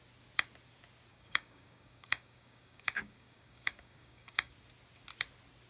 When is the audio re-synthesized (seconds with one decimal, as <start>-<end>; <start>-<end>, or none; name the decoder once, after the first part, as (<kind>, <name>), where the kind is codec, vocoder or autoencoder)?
1.1-4.5 (codec, DAC)